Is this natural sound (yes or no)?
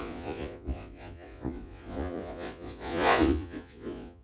no